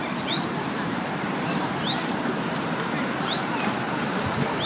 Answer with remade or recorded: remade